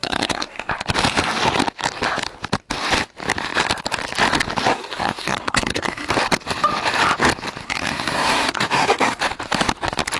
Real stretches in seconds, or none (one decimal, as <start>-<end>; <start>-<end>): 0.7-4.7; 6.1-7.6; 9.2-10.2